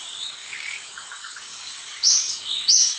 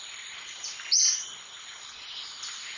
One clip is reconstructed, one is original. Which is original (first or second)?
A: second